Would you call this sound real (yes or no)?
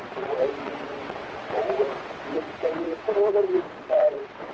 no